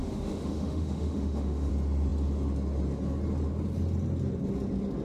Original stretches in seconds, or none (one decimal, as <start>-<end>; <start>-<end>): 1.7-5.0